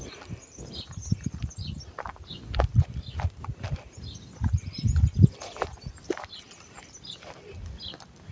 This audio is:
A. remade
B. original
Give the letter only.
B